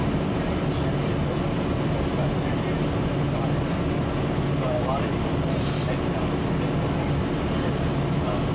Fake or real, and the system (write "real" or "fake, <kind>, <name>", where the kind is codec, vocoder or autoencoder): real